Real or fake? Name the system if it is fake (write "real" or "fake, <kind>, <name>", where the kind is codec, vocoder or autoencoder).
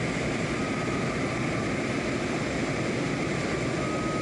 real